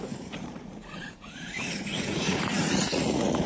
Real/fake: fake